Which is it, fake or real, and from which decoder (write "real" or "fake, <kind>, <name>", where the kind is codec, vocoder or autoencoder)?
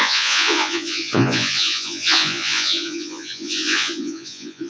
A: fake, vocoder, Vocos